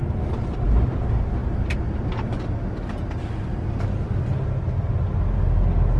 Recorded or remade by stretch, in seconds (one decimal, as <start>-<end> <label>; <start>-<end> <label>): 0.0-3.5 recorded; 3.5-4.4 remade; 4.4-6.0 recorded